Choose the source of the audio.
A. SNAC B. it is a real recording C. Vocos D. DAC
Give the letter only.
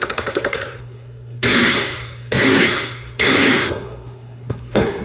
A